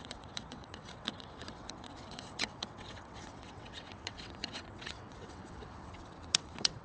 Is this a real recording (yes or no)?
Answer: no